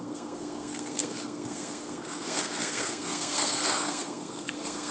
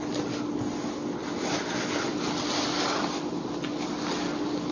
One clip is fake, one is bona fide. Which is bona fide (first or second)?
second